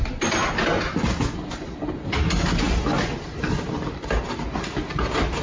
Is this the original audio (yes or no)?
yes